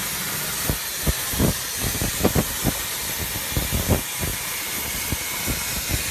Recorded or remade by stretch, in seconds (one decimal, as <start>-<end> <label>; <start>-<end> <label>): 0.0-6.1 recorded